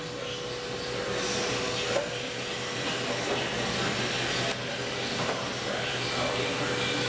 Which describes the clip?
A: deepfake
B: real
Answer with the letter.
B